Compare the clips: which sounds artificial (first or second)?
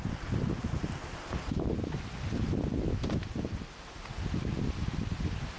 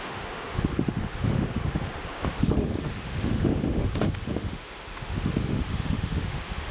second